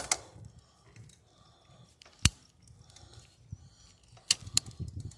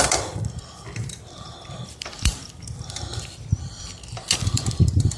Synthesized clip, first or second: second